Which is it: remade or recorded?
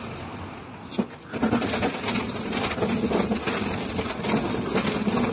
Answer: recorded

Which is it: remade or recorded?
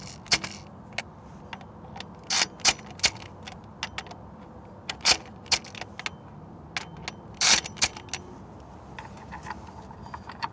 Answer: recorded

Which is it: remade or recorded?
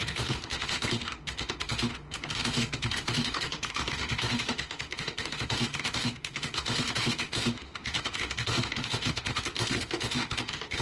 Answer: remade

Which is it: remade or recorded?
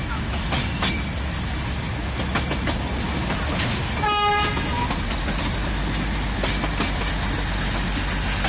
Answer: recorded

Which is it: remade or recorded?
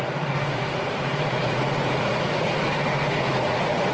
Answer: remade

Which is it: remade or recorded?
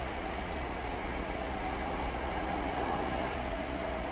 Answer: remade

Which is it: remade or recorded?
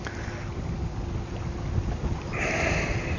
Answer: recorded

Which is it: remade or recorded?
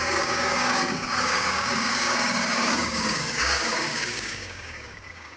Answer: remade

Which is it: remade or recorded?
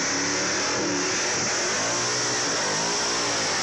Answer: recorded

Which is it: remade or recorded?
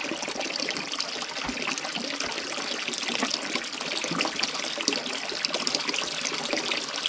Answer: recorded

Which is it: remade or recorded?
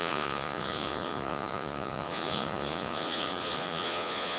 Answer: remade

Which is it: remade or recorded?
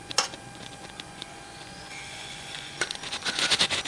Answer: remade